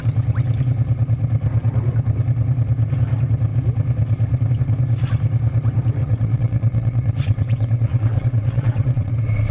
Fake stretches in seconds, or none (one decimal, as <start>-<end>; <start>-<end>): 6.0-9.1